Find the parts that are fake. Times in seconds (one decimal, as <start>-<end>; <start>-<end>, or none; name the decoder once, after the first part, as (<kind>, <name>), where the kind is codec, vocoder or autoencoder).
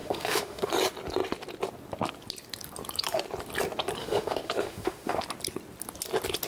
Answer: 0.0-0.7 (autoencoder, DAC-VAE); 4.0-5.2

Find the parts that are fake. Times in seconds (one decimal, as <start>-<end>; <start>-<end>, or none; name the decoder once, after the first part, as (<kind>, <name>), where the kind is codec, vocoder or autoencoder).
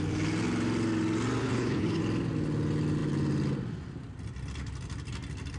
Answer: 1.4-2.0 (codec, HILCodec)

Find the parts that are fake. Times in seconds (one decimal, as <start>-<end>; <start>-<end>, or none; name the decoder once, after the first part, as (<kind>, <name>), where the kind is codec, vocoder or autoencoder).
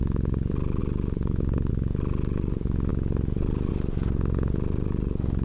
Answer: none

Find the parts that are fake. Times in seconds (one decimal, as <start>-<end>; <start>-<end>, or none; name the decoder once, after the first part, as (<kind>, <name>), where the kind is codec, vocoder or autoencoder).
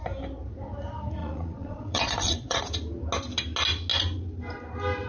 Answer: 1.2-2.6 (vocoder, Vocos)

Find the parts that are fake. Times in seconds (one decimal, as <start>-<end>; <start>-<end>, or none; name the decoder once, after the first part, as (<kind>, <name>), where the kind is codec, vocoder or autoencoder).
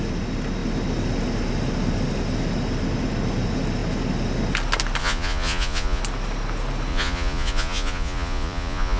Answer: 5.0-6.0 (vocoder, Vocos); 6.9-9.0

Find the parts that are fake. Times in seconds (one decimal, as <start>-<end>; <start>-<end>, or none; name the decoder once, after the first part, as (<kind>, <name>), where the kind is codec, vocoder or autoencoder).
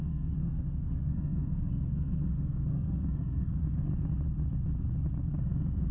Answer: 0.0-3.9 (codec, SNAC); 5.4-5.9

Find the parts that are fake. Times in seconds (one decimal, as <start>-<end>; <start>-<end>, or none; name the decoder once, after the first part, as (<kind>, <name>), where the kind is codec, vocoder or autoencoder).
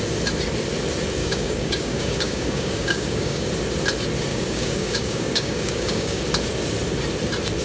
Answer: 1.2-3.5 (codec, DAC); 4.3-6.2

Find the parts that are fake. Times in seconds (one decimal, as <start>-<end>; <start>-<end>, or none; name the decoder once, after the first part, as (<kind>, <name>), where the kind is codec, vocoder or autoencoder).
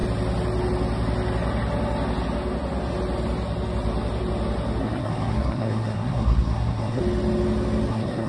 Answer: 4.8-7.0 (codec, SNAC); 7.9-8.3